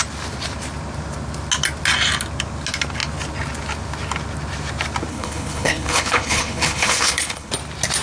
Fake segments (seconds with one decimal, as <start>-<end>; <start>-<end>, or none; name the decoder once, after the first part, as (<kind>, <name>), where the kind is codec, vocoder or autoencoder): 5.1-7.5 (codec, HILCodec)